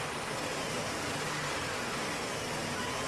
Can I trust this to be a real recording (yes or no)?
yes